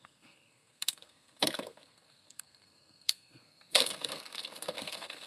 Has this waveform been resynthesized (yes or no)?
yes